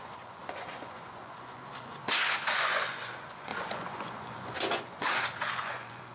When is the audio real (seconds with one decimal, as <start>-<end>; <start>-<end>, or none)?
none